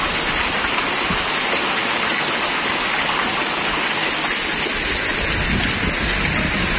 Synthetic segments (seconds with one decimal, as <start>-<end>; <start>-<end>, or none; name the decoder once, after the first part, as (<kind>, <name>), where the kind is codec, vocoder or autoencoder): none